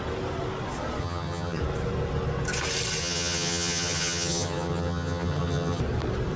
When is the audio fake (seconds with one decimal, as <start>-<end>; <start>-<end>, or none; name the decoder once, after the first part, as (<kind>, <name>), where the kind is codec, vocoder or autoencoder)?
1.0-1.6 (vocoder, HiFi-GAN); 3.0-5.8